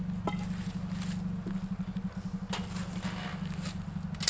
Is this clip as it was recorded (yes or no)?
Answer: yes